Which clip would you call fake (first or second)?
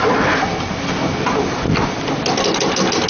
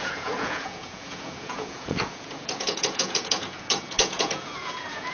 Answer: second